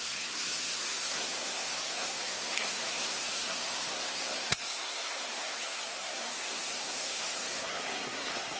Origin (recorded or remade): remade